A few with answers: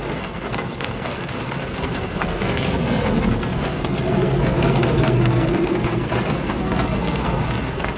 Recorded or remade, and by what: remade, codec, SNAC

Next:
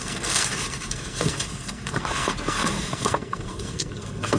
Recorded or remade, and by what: remade, codec, SNAC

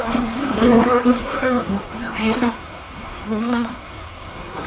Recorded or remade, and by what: remade, codec, SNAC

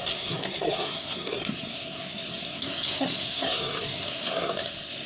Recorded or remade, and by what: remade, codec, SNAC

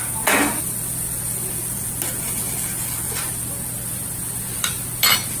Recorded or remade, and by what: recorded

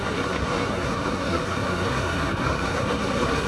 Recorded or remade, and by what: remade, codec, SNAC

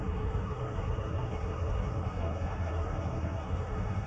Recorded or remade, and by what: remade, codec, SNAC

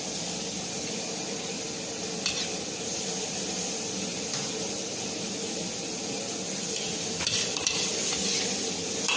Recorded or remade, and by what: recorded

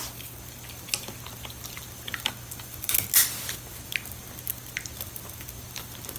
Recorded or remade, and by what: recorded